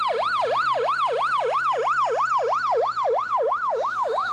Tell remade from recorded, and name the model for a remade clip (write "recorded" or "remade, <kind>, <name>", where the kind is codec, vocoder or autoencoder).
recorded